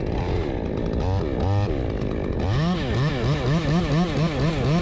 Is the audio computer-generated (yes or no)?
no